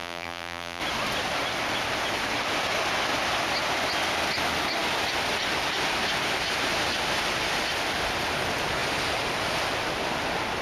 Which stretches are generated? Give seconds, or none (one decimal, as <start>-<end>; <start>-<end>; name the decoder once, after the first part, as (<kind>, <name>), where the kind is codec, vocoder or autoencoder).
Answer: 0.0-0.8 (vocoder, BigVGAN v2)